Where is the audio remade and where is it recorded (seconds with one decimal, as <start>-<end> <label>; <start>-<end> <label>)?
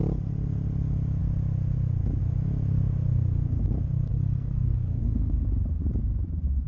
0.0-4.1 recorded; 4.1-5.3 remade; 5.3-6.7 recorded